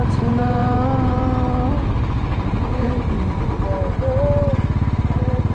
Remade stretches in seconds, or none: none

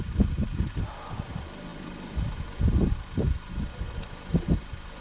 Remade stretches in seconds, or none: 1.7-2.2 (vocoder, BigVGAN v2)

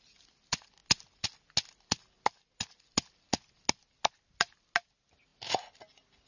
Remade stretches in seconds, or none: none

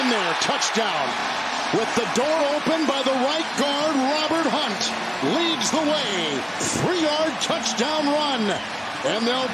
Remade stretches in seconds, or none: none

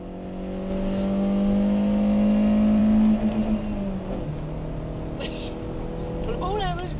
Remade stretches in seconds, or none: none